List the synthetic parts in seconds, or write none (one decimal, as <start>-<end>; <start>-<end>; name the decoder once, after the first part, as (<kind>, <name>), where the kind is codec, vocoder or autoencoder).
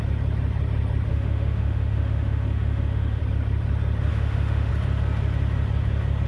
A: 1.1-3.2 (autoencoder, DAC-VAE); 4.1-4.7